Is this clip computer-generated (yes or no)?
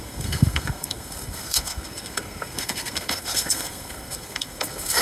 yes